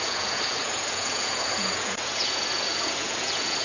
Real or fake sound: fake